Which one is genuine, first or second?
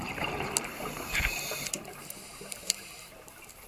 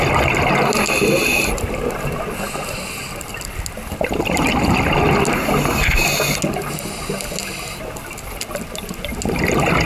second